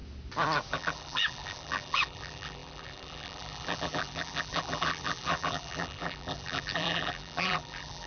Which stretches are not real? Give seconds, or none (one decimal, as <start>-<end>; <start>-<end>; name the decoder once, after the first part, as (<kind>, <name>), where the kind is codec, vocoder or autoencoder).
0.7-8.1 (vocoder, BigVGAN v2)